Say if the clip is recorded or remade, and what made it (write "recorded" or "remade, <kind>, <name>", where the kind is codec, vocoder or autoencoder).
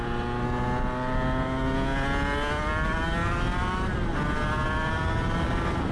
recorded